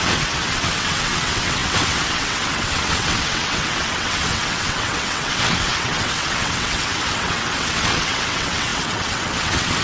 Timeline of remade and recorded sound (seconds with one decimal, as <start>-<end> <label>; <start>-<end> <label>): 0.0-9.8 remade